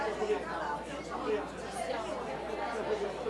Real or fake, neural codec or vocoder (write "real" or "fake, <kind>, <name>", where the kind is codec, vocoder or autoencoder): real